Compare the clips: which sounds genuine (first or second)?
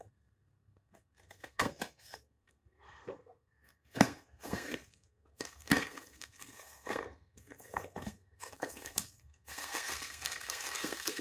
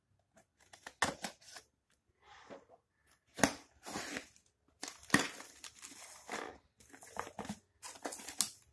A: second